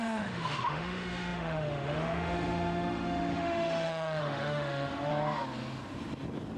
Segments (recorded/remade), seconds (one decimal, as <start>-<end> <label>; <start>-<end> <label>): 0.0-5.1 remade; 5.1-6.6 recorded